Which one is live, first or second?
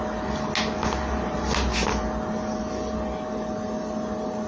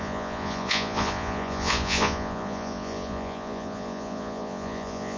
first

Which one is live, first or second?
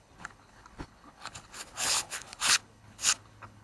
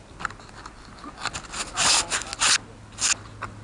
second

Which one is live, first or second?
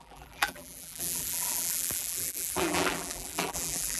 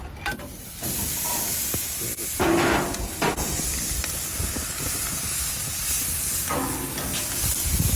second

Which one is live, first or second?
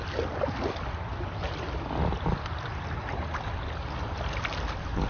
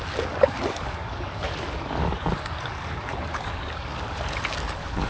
first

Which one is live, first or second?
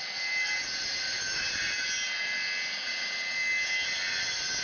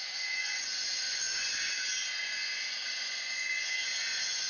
first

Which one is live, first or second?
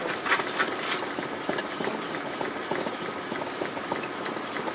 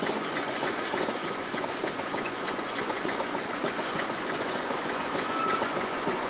first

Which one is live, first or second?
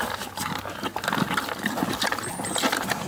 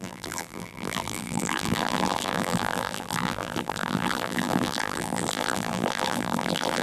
first